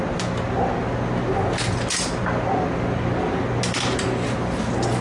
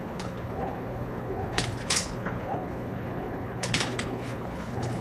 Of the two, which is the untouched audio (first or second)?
first